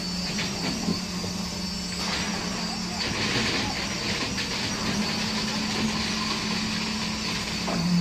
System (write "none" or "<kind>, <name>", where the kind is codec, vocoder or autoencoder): none